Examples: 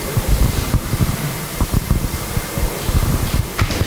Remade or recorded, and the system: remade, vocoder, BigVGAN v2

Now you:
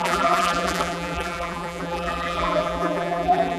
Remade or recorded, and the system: remade, vocoder, BigVGAN v2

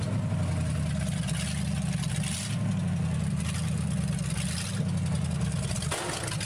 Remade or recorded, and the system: recorded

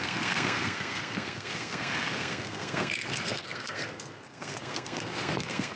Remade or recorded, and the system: remade, codec, SNAC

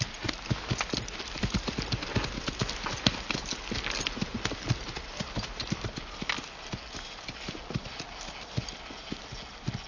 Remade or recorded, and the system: recorded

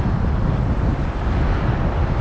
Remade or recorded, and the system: recorded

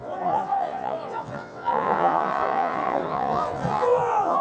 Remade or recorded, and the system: remade, vocoder, WaveNeXt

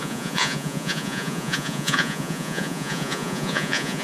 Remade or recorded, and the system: remade, vocoder, Vocos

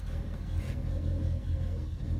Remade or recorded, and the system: remade, codec, SNAC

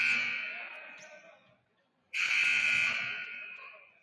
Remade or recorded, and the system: remade, vocoder, Vocos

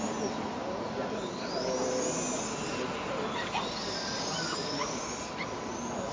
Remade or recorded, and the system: recorded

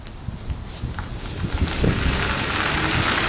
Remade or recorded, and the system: recorded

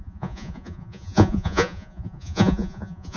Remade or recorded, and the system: remade, vocoder, Vocos